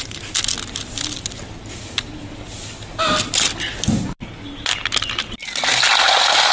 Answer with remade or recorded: recorded